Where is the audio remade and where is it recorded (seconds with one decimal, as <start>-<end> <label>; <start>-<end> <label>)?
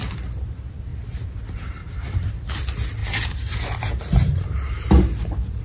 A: 0.0-1.8 recorded; 1.8-2.3 remade; 2.3-3.0 recorded; 3.0-5.6 remade